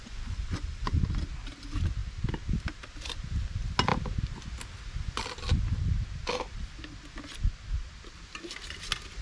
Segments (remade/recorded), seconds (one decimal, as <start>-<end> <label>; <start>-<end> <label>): 0.0-1.0 remade; 1.0-9.2 recorded